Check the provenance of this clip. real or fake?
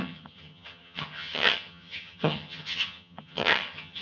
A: fake